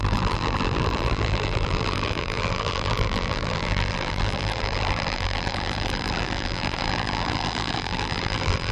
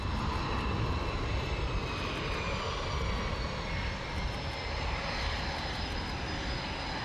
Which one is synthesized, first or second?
first